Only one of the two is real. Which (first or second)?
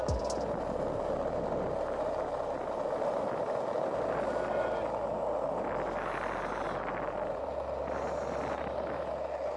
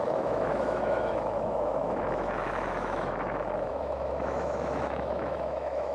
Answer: first